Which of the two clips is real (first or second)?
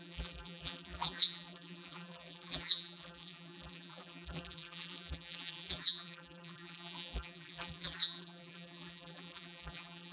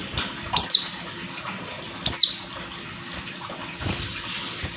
second